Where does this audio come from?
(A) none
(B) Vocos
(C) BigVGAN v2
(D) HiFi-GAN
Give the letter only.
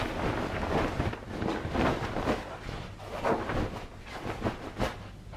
C